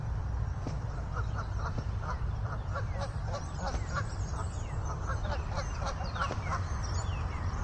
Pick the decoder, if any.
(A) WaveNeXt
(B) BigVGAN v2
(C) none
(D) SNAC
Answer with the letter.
B